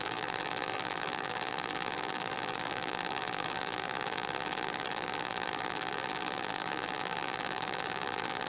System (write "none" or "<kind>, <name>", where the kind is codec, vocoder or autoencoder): vocoder, BigVGAN v2